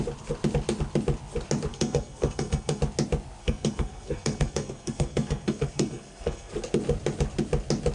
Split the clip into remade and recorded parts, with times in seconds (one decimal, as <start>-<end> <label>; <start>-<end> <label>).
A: 0.0-1.7 recorded; 1.7-2.8 remade; 2.8-3.4 recorded; 3.4-6.5 remade; 6.5-7.9 recorded